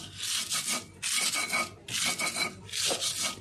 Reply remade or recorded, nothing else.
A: recorded